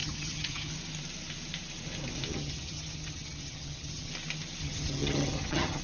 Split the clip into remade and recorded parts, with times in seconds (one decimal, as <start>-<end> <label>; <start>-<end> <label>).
0.0-0.7 remade; 0.7-2.3 recorded; 2.3-4.1 remade; 4.1-4.6 recorded; 4.6-5.8 remade